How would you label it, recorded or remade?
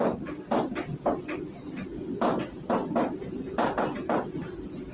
recorded